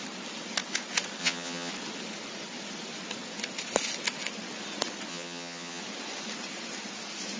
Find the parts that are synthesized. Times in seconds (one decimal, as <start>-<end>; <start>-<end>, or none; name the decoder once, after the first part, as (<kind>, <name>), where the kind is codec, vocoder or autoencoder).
1.2-1.7 (vocoder, HiFi-GAN); 5.1-5.8